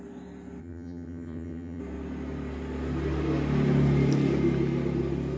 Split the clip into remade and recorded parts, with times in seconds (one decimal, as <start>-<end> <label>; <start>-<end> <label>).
0.0-0.6 recorded; 0.6-1.8 remade; 1.8-5.4 recorded